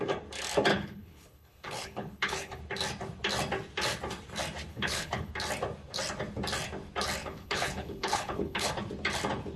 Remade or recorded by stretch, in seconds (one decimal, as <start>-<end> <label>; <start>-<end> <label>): 0.0-0.7 recorded; 0.7-2.6 remade; 2.6-4.7 recorded; 4.7-5.3 remade; 5.3-7.2 recorded; 7.2-8.7 remade; 8.7-9.6 recorded